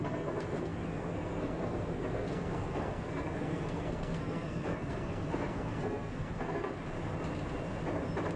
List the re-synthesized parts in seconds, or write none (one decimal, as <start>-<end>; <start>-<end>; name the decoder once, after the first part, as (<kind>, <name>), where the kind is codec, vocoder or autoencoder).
0.0-6.7 (codec, SNAC)